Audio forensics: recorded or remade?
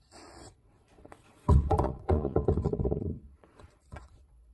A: remade